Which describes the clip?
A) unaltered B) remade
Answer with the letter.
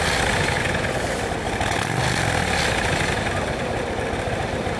A